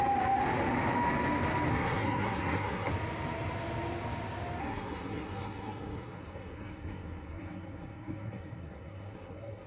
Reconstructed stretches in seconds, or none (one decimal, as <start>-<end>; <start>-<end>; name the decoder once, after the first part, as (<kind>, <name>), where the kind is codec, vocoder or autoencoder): 1.7-2.9 (codec, SNAC); 4.6-9.7